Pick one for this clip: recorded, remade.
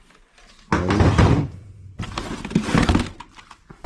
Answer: recorded